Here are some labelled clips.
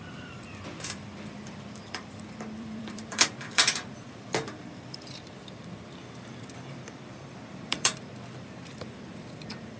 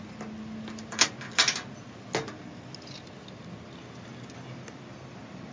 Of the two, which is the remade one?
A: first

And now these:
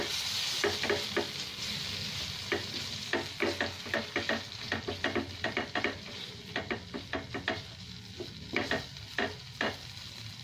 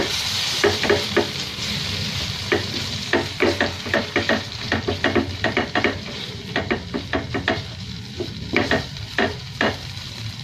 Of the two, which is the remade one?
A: second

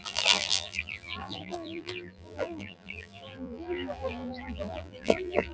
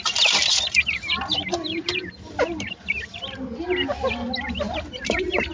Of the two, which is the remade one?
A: first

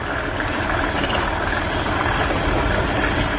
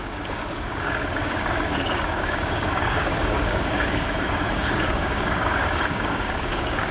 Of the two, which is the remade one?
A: second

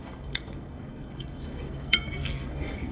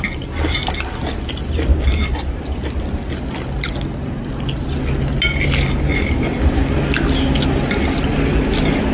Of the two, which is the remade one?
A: first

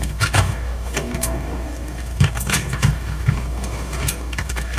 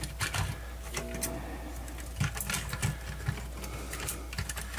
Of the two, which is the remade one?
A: first